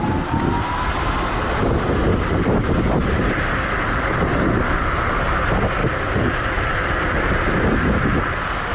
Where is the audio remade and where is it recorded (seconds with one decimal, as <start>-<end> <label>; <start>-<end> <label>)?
0.0-2.1 recorded; 2.1-2.7 remade; 2.7-4.3 recorded; 4.3-5.2 remade; 5.2-5.8 recorded; 5.8-6.8 remade; 6.8-8.7 recorded